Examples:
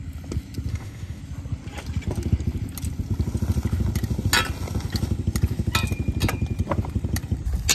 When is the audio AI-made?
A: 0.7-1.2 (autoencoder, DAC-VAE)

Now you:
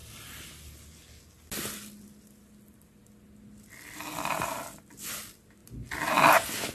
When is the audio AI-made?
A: none

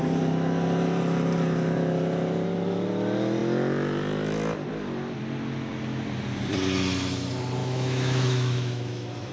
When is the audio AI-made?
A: 7.6-9.3 (autoencoder, DAC-VAE)

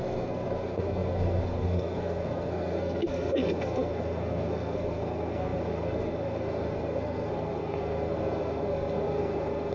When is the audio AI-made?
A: 0.0-9.7 (codec, SNAC)

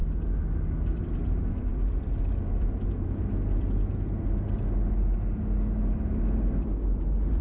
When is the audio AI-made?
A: none

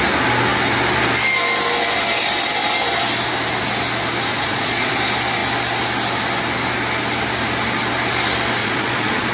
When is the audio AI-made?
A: 4.3-5.0 (vocoder, Vocos); 8.6-9.3